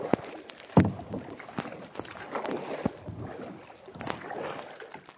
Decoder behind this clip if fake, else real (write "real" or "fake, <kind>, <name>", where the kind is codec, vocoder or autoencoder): real